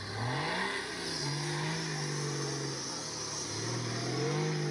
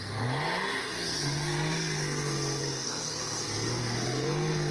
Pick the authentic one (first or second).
first